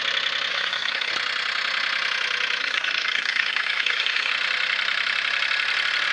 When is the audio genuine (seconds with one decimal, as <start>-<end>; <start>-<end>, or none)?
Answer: 0.0-0.5; 1.1-2.6; 4.3-6.1